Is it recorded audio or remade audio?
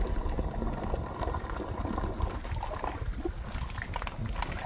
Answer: recorded